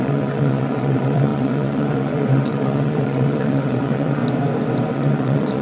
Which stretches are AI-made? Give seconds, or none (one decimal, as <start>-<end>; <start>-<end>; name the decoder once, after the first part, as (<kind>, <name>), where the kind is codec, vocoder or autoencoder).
0.0-4.2 (vocoder, WaveNeXt); 4.9-5.6